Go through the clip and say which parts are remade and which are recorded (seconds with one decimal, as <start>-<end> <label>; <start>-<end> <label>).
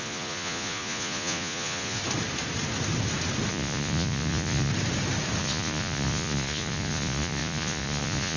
0.0-2.0 remade; 2.0-3.5 recorded; 3.5-4.7 remade; 4.7-5.4 recorded; 5.4-8.4 remade